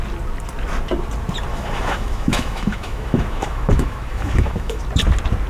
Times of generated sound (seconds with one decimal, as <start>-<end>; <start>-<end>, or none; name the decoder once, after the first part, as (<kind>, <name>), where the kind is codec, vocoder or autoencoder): 1.5-4.8 (autoencoder, DAC-VAE)